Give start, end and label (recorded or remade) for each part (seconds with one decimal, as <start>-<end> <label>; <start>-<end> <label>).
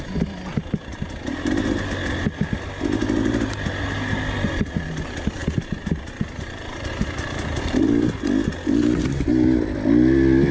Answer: 0.0-10.5 recorded